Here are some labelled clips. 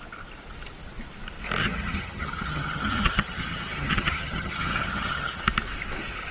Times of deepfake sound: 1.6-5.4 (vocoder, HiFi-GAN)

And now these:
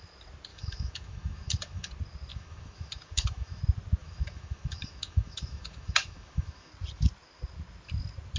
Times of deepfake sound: 0.5-1.9 (autoencoder, DAC-VAE); 2.3-3.6; 4.0-6.7

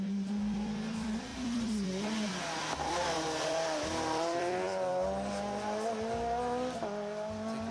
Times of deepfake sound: 0.0-4.9 (vocoder, BigVGAN v2)

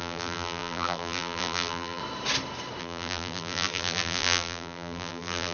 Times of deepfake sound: 0.0-2.0 (vocoder, BigVGAN v2); 2.8-5.5